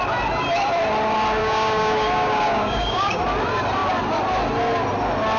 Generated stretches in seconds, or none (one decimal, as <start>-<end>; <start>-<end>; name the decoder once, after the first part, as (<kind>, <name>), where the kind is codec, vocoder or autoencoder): 1.4-3.2 (codec, DAC)